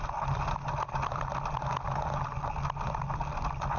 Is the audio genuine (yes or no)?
yes